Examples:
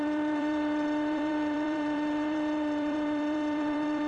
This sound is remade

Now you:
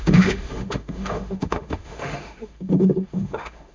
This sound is remade